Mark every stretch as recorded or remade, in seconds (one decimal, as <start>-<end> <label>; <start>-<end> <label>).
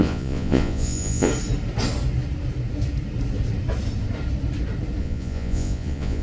0.0-1.3 remade; 1.3-5.0 recorded; 5.0-6.2 remade